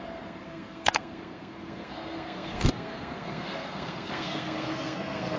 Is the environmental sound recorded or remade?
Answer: remade